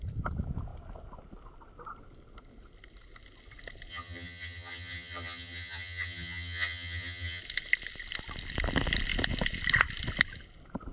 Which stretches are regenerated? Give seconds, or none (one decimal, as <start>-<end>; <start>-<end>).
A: 3.9-7.4